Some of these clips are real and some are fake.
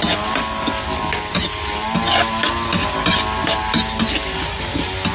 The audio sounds real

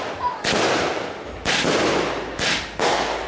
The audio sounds real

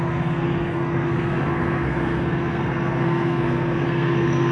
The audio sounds fake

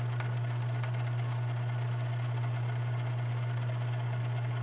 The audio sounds real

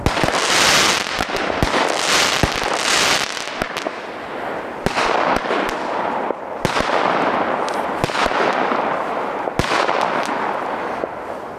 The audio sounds real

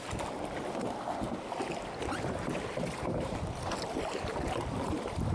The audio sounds real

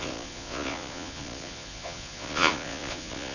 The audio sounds fake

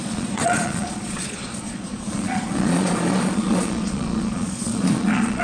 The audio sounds fake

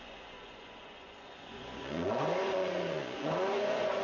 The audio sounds fake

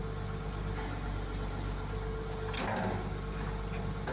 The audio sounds real